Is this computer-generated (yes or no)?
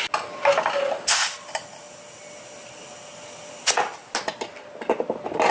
no